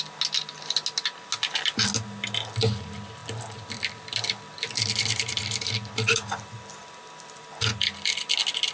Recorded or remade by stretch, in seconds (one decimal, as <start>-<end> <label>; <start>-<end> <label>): 0.0-3.2 recorded; 3.2-7.4 remade; 7.4-8.7 recorded